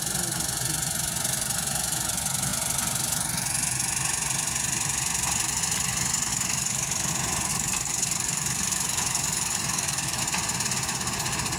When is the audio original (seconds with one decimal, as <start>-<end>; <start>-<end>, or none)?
0.0-6.3; 7.1-7.5; 10.2-11.6